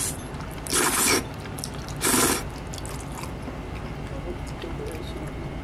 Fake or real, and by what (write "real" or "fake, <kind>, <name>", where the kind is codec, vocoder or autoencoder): real